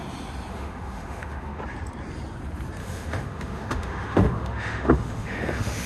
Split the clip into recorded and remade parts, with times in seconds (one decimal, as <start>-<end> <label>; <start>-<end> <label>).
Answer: 0.0-0.5 recorded; 0.5-1.6 remade; 1.6-2.8 recorded; 2.8-5.9 remade